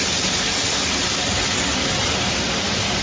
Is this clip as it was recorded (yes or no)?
yes